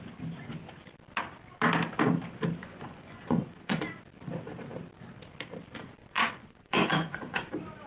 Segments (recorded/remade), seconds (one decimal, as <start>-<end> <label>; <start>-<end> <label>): 0.0-2.6 recorded; 2.6-3.8 remade; 3.8-6.0 recorded; 6.0-7.5 remade; 7.5-7.9 recorded